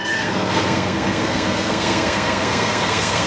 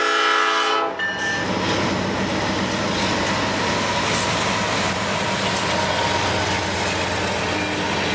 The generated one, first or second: first